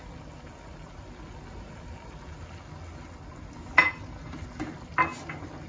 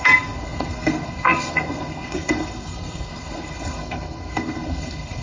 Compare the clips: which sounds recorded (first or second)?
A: first